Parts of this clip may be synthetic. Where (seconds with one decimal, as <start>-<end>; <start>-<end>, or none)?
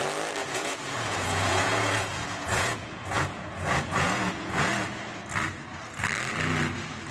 0.4-4.7